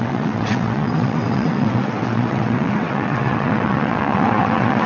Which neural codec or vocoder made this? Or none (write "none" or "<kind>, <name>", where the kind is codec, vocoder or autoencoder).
vocoder, WaveNeXt